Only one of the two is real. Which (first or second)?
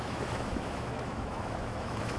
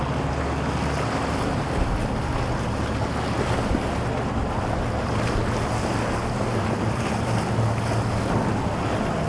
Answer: second